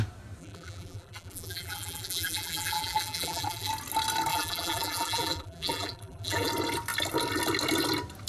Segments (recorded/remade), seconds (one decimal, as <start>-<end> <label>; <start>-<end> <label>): 0.0-0.4 recorded; 0.4-3.7 remade; 3.7-4.3 recorded; 4.3-6.5 remade; 6.5-8.3 recorded